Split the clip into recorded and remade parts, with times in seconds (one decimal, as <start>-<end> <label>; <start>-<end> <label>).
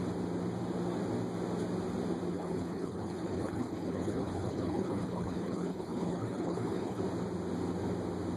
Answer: 0.0-2.3 recorded; 2.3-7.0 remade; 7.0-8.4 recorded